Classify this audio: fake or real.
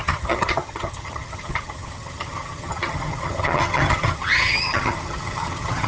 fake